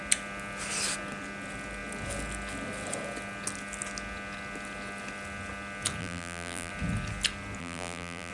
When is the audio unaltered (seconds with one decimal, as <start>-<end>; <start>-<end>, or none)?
0.0-6.0; 6.7-7.6